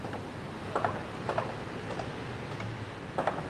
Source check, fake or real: fake